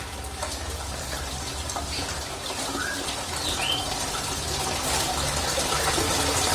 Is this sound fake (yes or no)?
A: yes